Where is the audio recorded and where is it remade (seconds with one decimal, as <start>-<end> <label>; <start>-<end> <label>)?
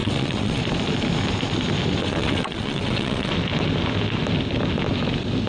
0.0-0.6 remade; 0.6-2.0 recorded; 2.0-3.3 remade; 3.3-5.5 recorded